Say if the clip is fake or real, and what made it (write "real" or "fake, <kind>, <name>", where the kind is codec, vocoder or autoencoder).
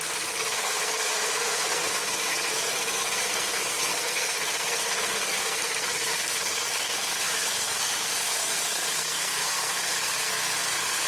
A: fake, codec, SNAC